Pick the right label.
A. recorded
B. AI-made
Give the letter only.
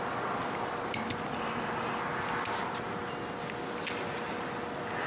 A